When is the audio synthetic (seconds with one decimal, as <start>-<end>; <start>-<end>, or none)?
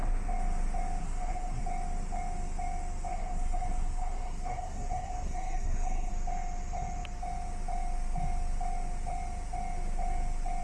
1.0-1.6; 3.1-6.1